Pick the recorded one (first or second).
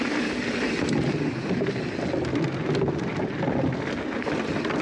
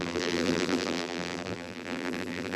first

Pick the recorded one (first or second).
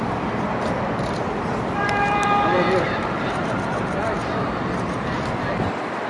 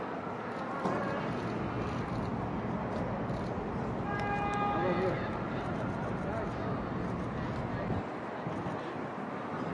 second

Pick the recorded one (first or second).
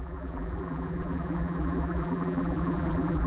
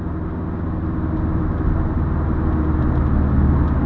second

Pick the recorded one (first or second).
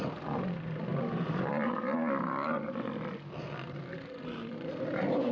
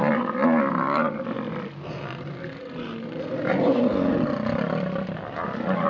second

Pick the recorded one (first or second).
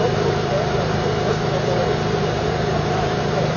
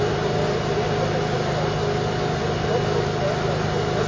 second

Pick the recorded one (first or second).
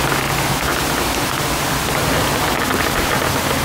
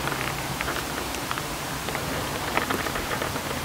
first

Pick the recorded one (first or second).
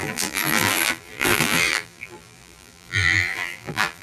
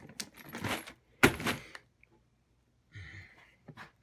second